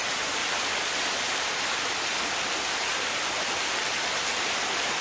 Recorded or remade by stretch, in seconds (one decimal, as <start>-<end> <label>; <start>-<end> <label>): 0.0-5.0 recorded